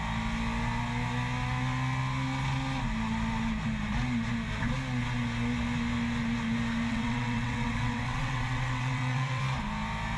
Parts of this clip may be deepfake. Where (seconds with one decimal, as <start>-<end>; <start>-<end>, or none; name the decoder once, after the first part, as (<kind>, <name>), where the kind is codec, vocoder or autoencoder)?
6.9-9.4 (vocoder, WaveNeXt)